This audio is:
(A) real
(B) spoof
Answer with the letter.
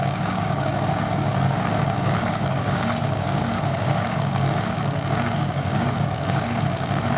B